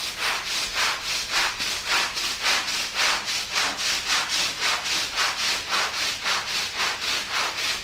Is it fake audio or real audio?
real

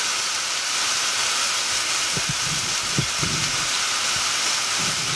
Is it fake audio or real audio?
real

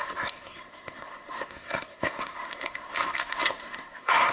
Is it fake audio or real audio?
fake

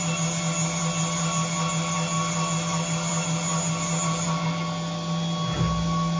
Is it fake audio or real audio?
real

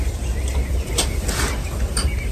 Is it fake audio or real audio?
real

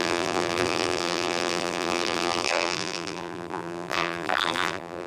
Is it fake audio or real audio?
fake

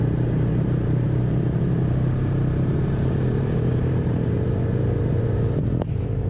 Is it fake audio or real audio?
fake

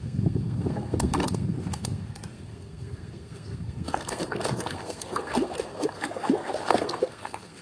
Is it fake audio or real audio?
fake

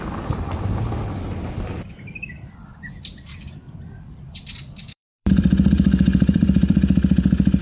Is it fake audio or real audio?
fake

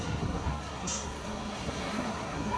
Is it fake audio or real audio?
fake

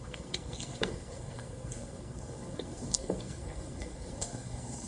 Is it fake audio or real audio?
fake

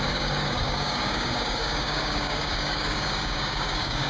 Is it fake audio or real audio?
fake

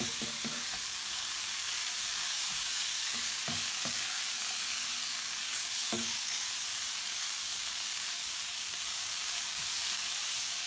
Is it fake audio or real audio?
fake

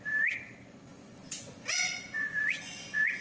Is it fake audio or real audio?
fake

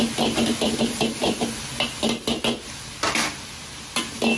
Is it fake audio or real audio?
real